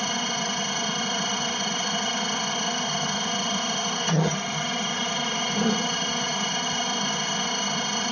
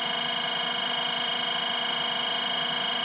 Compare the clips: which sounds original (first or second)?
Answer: second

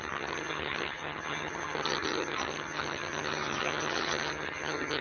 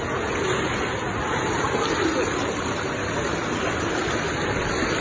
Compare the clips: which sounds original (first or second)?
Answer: second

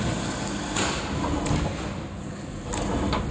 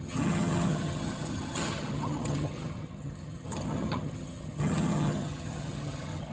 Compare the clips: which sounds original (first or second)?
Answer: first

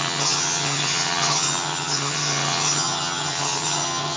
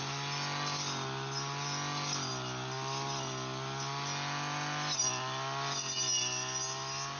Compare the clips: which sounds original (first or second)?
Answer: second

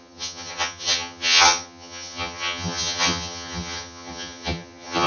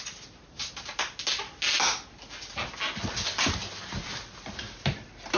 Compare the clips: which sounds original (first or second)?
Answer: second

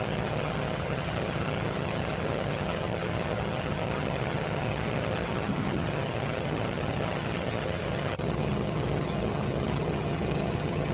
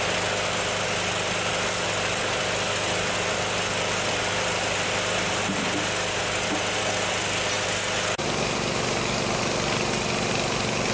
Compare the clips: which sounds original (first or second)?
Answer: second